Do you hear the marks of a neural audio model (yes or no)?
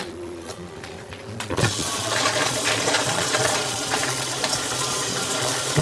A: yes